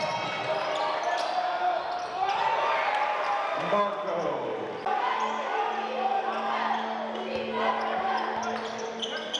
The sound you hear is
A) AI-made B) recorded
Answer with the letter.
B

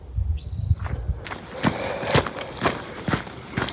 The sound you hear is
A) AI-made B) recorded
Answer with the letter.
B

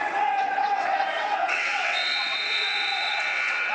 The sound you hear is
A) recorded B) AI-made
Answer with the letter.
B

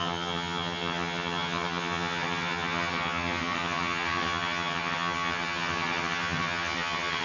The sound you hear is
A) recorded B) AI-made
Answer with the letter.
B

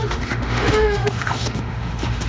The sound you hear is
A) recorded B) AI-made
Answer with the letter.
B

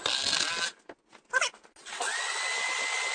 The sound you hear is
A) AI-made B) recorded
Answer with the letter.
B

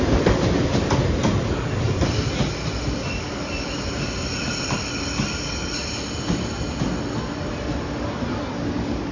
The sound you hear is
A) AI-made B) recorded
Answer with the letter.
B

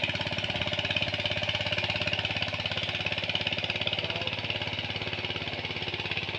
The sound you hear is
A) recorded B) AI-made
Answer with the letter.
A